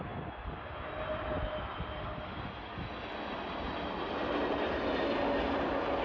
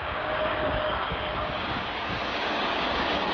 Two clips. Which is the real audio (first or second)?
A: first